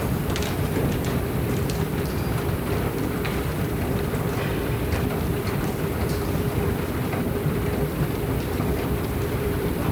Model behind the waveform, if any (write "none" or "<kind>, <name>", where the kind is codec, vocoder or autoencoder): vocoder, BigVGAN v2